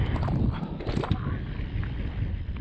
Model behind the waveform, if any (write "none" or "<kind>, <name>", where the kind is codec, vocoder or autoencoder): none